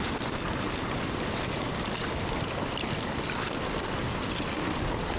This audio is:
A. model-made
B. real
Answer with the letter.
B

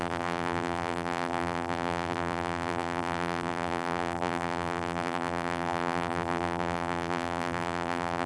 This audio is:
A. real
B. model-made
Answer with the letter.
B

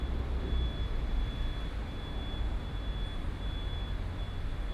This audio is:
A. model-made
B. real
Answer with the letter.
B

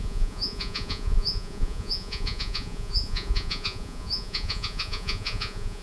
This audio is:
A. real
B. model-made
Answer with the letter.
B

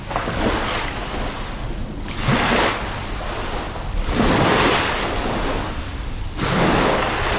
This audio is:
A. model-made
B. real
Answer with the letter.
B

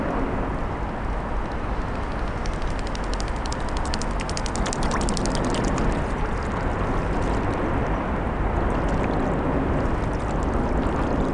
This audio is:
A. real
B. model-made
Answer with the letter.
A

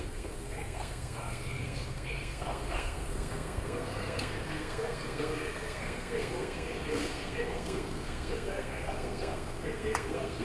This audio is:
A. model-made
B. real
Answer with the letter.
A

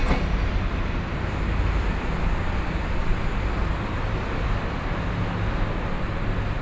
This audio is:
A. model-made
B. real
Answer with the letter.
B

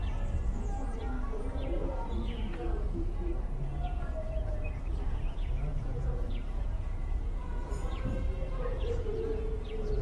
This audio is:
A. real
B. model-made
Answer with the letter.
B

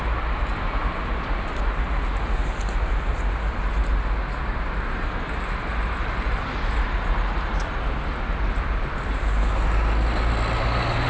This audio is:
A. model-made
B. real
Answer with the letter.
B